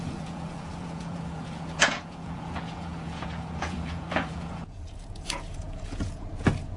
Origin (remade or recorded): remade